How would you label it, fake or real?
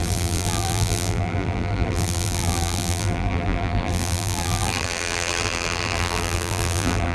fake